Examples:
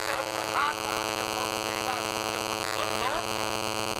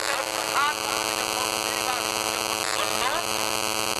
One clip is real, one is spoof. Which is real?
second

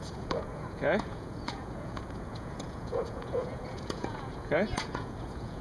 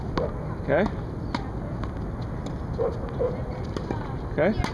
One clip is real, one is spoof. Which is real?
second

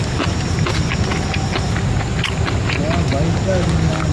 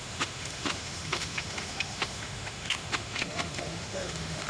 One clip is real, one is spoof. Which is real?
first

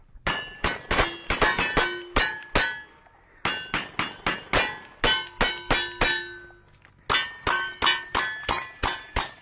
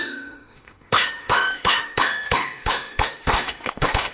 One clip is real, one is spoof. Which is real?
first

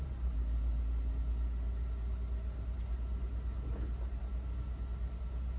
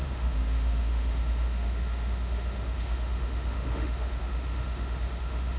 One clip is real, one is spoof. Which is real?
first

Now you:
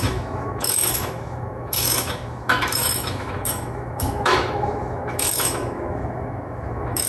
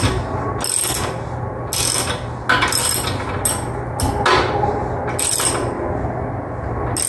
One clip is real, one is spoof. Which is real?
second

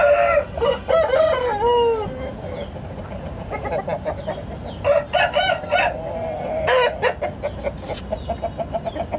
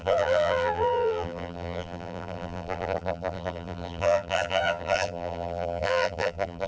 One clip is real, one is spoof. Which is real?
first